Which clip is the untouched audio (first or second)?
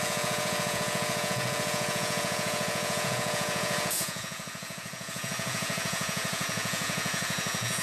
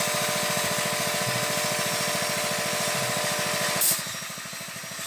second